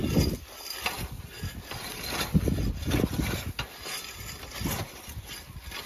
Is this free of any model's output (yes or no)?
yes